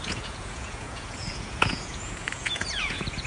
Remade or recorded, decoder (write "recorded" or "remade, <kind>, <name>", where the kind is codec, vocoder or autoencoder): remade, vocoder, Vocos